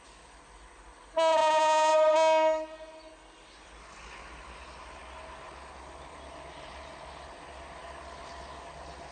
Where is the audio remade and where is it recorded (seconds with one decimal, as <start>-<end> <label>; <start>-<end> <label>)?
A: 0.0-9.1 recorded